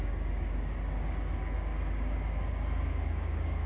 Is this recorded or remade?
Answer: remade